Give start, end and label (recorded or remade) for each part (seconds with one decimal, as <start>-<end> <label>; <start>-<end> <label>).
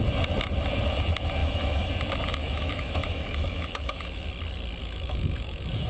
0.0-1.4 recorded; 1.4-1.9 remade; 1.9-2.4 recorded; 2.4-4.3 remade; 4.3-4.8 recorded; 4.8-5.9 remade